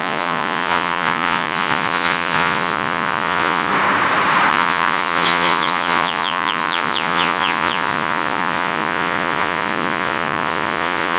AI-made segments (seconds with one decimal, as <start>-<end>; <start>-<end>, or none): 0.0-3.7; 4.5-11.2